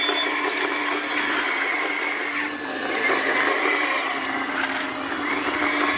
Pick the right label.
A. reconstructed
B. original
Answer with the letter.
B